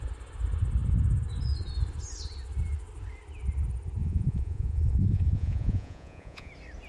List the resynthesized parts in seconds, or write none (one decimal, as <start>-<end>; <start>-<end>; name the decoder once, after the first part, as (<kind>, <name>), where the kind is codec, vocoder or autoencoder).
4.0-6.5 (vocoder, Vocos)